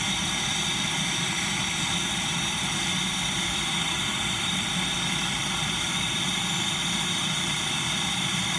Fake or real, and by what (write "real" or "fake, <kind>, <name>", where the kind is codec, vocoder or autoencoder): fake, vocoder, BigVGAN v2